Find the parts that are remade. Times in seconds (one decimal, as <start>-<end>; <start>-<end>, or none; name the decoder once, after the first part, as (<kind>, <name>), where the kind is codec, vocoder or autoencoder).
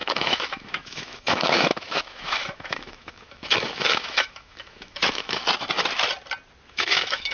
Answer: 0.0-5.4 (autoencoder, DAC-VAE); 6.7-7.3